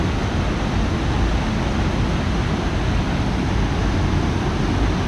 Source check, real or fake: real